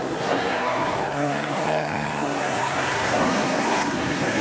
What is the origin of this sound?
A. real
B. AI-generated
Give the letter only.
B